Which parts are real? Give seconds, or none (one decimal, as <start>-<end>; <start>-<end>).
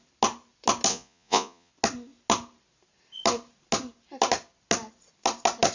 0.0-0.9; 1.7-5.7